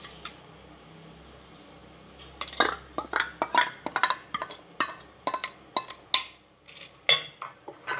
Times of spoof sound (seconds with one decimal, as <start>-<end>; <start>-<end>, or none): none